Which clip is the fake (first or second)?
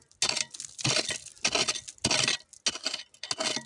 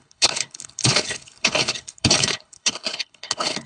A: second